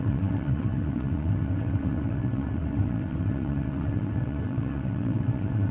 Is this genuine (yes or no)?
no